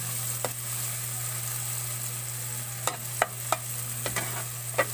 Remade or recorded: recorded